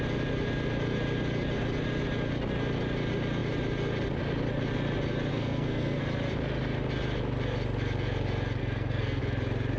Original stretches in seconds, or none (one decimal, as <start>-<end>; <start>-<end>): 0.0-5.3; 6.0-8.6; 9.2-9.8